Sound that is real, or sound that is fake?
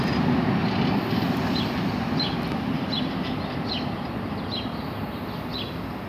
real